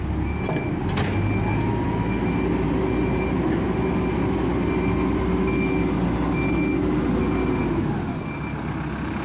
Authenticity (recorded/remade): recorded